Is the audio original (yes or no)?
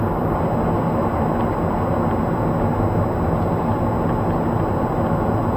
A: yes